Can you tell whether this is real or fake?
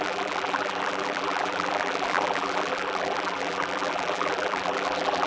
fake